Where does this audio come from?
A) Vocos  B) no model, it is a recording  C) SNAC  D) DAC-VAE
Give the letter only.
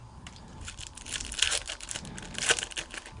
B